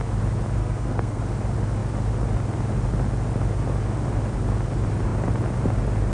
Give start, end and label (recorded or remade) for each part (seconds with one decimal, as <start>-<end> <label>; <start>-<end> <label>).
0.0-0.6 recorded; 0.6-1.2 remade; 1.2-6.1 recorded